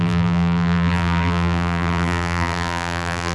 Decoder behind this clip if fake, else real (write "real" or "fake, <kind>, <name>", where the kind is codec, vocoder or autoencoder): fake, vocoder, BigVGAN v2